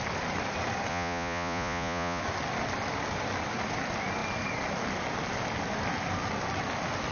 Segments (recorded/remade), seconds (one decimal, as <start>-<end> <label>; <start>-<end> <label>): 0.0-0.9 recorded; 0.9-2.2 remade; 2.2-7.1 recorded